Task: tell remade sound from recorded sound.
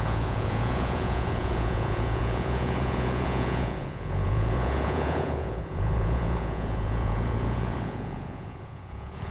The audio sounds remade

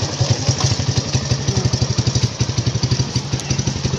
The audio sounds recorded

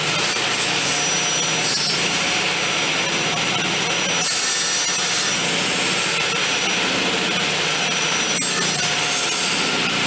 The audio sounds recorded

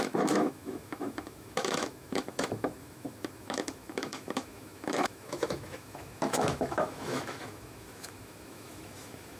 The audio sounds remade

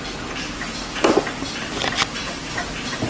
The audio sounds recorded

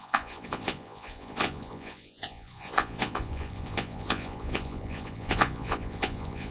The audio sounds remade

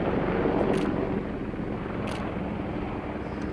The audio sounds recorded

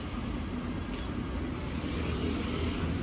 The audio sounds recorded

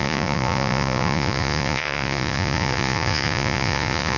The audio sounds remade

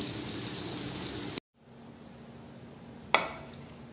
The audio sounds recorded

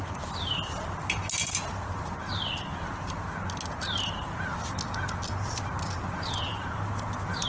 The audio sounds recorded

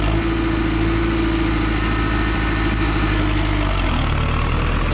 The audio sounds recorded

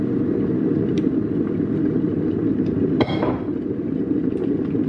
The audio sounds recorded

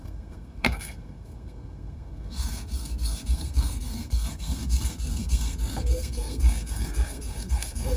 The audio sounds remade